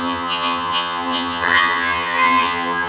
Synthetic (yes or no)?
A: yes